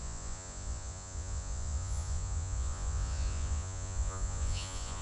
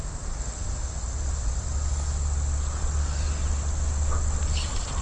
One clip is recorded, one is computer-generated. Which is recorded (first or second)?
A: second